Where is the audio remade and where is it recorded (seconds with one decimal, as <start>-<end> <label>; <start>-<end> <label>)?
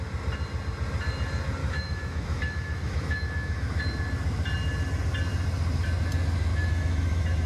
0.0-1.6 recorded; 1.6-3.8 remade; 3.8-6.5 recorded; 6.5-7.5 remade